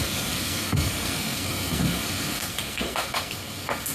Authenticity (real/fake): fake